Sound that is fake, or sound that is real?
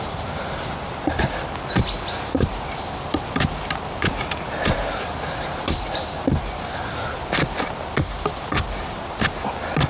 real